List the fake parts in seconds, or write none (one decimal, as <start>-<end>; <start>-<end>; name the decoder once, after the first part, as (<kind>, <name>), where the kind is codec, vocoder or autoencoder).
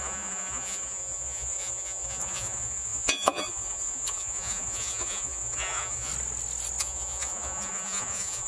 0.0-6.1 (vocoder, Vocos); 6.8-8.5